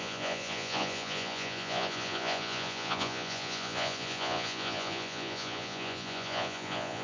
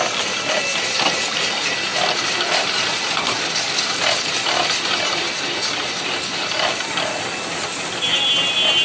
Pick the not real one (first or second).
first